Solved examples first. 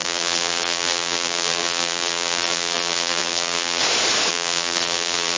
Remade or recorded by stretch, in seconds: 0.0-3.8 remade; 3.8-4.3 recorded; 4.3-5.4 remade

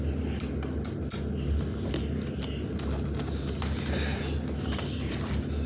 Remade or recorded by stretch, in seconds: 0.0-5.7 recorded

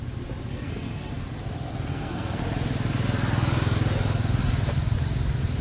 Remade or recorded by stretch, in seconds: 0.0-0.5 recorded; 0.5-1.1 remade; 1.1-1.9 recorded; 1.9-2.4 remade; 2.4-5.6 recorded

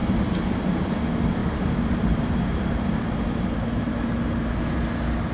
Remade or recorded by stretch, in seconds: 0.0-0.9 remade; 0.9-1.4 recorded; 1.4-4.6 remade; 4.6-5.3 recorded

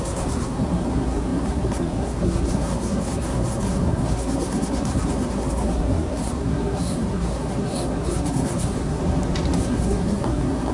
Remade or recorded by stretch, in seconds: 0.0-9.0 remade; 9.0-9.6 recorded; 9.6-10.7 remade

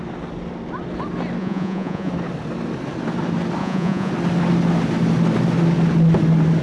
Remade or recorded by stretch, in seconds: 0.0-1.4 recorded; 1.4-2.1 remade; 2.1-3.6 recorded; 3.6-4.1 remade; 4.1-6.6 recorded

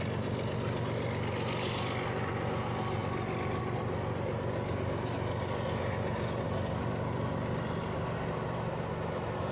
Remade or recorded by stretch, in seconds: 0.0-9.5 recorded